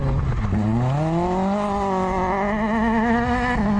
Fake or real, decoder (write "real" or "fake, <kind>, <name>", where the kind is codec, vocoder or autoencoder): real